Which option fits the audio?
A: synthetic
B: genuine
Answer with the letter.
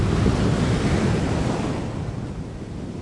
B